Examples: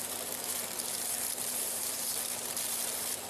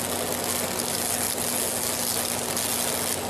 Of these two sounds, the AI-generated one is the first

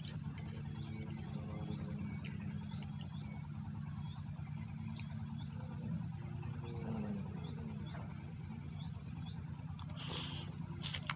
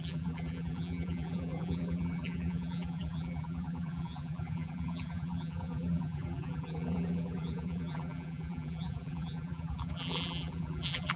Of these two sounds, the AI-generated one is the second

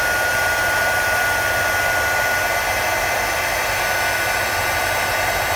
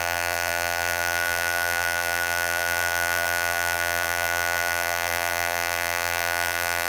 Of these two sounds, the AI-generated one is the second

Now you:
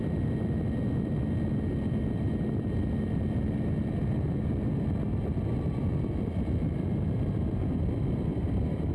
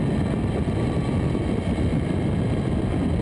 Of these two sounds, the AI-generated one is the second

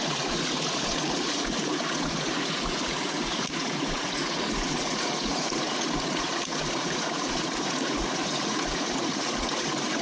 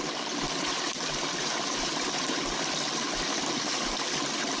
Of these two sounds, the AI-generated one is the first